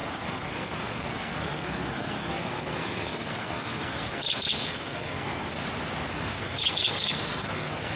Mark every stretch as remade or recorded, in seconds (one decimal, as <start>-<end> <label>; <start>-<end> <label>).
0.0-5.6 remade; 5.6-6.1 recorded; 6.1-8.0 remade